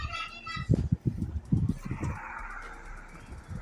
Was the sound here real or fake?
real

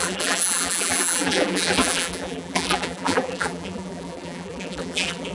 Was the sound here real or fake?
fake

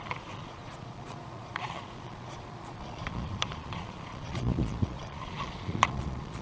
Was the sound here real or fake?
fake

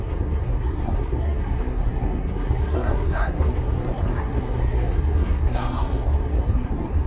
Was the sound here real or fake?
fake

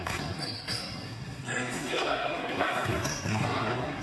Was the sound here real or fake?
fake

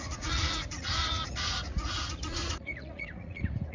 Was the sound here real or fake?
fake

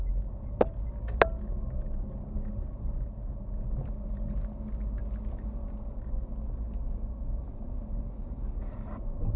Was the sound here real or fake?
real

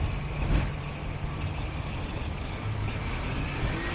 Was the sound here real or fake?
real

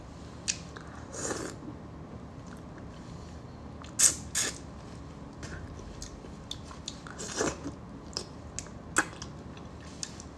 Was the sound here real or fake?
real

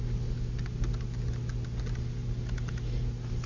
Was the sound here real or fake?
real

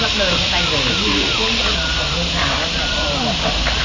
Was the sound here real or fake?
real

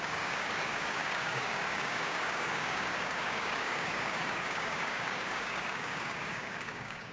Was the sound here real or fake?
fake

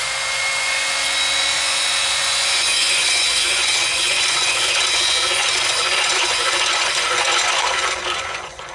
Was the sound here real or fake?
fake